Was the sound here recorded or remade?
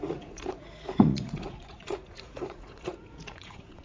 remade